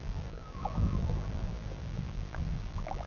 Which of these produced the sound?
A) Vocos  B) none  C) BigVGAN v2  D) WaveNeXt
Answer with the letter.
C